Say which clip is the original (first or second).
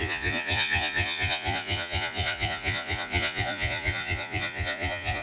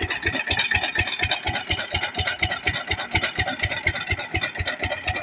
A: second